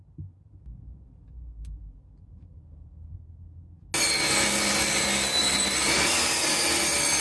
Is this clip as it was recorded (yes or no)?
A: yes